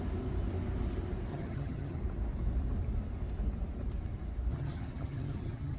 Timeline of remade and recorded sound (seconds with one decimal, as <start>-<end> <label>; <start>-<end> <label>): 0.0-1.3 recorded; 1.3-2.0 remade; 2.0-4.5 recorded; 4.5-5.8 remade